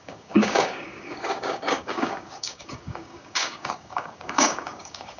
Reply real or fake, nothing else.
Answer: fake